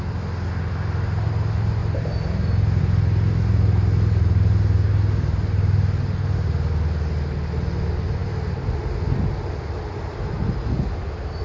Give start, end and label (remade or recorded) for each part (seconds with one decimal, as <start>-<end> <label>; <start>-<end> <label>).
0.0-11.4 recorded